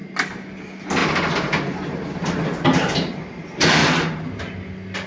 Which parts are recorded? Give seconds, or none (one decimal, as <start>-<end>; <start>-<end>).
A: 0.0-5.1